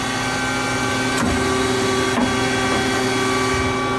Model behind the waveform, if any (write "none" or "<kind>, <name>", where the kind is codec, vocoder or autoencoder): none